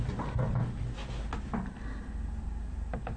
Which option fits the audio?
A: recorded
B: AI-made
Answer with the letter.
A